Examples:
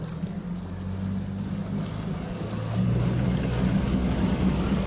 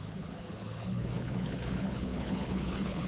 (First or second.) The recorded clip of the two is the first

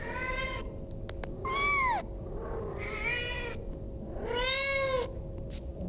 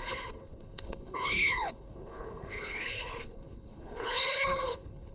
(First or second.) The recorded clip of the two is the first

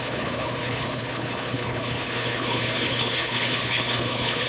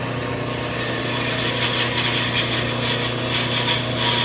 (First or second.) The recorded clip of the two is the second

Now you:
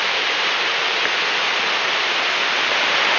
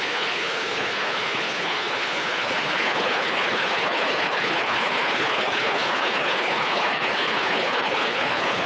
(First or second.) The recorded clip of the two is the first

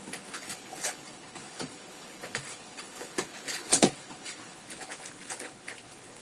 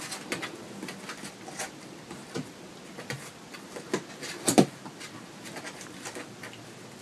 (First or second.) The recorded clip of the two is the second